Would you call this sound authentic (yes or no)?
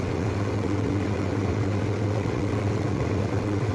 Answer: no